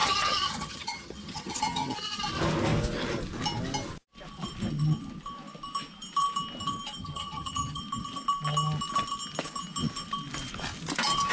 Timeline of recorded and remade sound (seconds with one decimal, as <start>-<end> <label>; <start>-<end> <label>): 0.0-2.2 remade; 2.2-7.0 recorded; 7.0-7.8 remade; 7.8-11.3 recorded